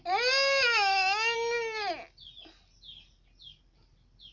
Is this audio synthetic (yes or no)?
no